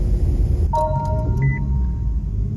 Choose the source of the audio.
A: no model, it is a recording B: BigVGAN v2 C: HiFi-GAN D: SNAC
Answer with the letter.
A